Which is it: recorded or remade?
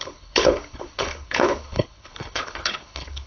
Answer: remade